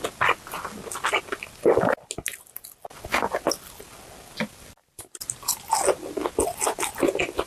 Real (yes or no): yes